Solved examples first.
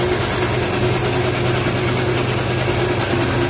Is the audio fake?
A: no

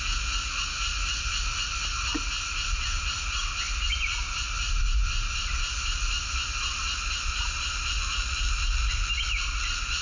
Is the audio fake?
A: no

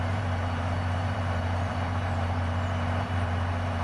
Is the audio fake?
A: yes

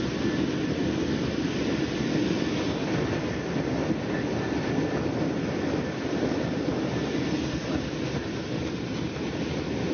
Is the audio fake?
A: no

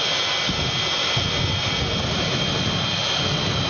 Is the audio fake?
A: no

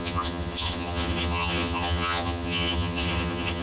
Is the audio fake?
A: yes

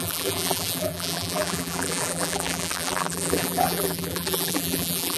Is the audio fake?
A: yes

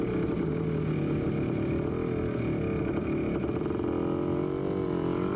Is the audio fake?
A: no